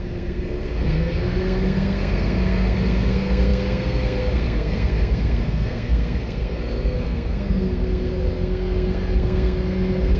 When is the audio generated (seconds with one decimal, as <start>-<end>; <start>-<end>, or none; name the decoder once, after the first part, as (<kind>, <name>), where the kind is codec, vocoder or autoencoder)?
0.0-10.2 (codec, SNAC)